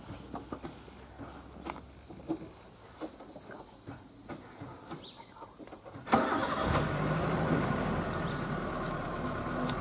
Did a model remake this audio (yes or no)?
no